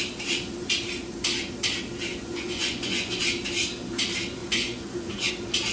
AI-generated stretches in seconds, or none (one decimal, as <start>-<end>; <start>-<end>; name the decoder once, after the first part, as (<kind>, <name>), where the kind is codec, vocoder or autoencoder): 2.1-3.2 (vocoder, Vocos); 4.4-5.3